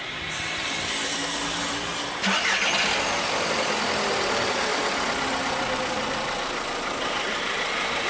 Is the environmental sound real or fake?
real